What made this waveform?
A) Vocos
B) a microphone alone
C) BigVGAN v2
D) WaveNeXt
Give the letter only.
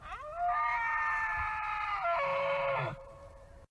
C